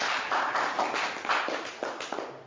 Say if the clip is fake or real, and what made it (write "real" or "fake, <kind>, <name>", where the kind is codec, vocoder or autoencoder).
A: real